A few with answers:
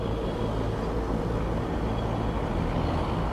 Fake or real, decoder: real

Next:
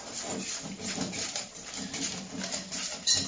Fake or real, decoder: real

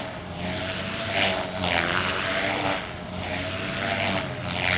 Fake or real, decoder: real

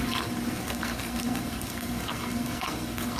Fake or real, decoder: fake, codec, SNAC